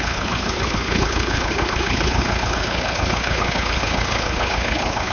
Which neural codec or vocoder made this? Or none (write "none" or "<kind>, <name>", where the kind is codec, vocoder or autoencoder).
codec, HILCodec